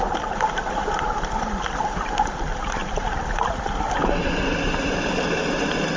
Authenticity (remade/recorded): recorded